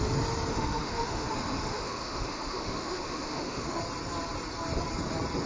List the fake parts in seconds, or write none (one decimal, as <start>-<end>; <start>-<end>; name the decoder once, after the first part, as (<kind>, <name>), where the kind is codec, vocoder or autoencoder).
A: 0.5-3.8 (autoencoder, DAC-VAE)

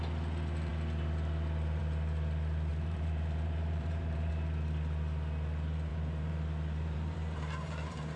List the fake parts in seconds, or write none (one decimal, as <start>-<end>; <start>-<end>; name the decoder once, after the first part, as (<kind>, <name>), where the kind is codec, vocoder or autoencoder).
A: 2.7-4.3 (vocoder, BigVGAN v2); 5.9-8.2

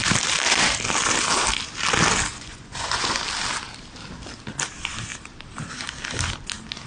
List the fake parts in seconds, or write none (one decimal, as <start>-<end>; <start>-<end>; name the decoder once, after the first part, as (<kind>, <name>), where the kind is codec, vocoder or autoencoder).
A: 2.3-3.2 (vocoder, Vocos)